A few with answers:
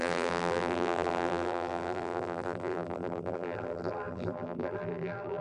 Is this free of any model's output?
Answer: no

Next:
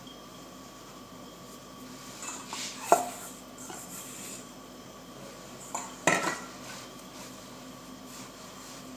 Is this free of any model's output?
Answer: yes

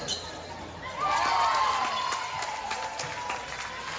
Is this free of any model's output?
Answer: yes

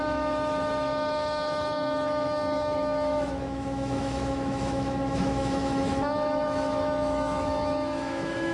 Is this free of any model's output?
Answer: no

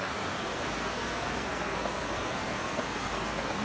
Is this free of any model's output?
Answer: no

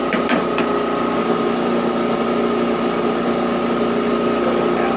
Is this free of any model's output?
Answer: no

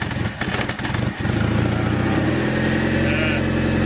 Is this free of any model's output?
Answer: yes